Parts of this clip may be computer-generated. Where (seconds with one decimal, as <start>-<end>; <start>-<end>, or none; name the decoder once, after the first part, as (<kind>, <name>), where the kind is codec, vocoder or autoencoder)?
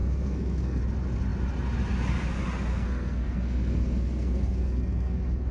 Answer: 0.0-0.8 (codec, SNAC); 2.7-5.5